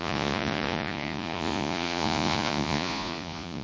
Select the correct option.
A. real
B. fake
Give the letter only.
B